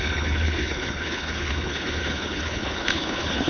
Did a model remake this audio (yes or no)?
yes